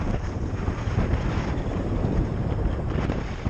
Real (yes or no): no